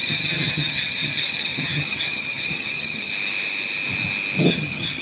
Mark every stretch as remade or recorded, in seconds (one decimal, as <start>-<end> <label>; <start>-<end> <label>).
0.0-3.1 remade; 3.1-4.4 recorded; 4.4-5.0 remade